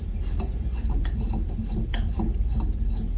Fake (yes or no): no